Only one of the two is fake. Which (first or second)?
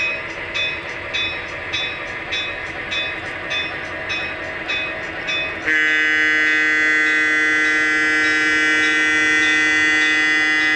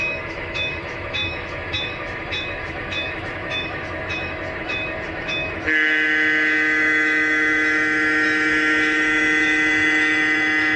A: second